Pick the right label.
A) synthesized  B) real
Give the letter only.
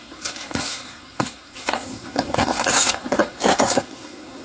A